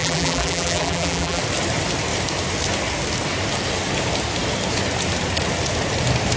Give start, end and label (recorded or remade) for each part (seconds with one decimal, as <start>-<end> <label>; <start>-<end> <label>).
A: 0.0-1.4 remade; 1.4-6.4 recorded